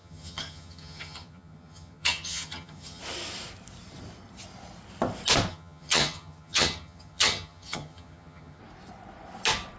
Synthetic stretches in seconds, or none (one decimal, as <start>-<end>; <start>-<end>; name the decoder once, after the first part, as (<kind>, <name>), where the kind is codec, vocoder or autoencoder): 0.0-3.0 (vocoder, HiFi-GAN); 5.5-8.6

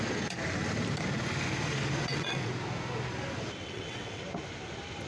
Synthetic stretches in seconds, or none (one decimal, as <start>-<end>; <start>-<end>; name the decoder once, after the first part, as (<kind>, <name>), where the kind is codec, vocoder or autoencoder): 2.0-2.5 (vocoder, WaveNeXt); 3.6-4.2